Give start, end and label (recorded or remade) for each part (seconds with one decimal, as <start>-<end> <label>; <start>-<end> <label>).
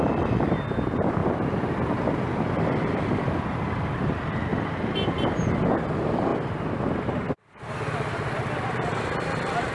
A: 0.0-1.2 recorded; 1.2-3.9 remade; 3.9-9.7 recorded